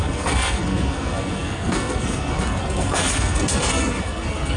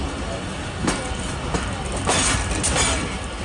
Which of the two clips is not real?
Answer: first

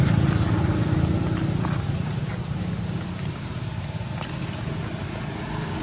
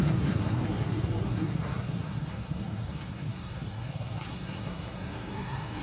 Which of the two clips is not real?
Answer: second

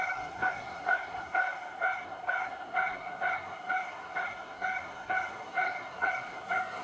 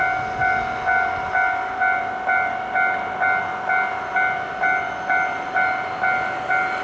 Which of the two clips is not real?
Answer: first